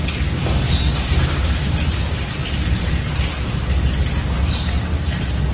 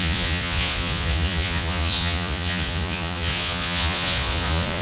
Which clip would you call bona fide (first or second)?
first